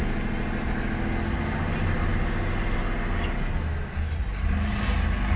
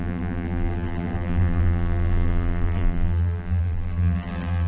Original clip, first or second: first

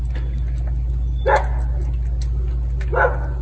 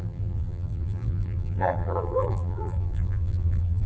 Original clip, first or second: first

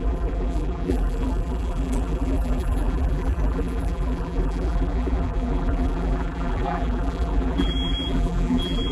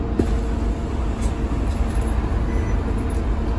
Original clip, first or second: second